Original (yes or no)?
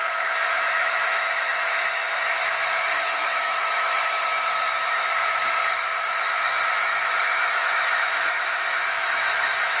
no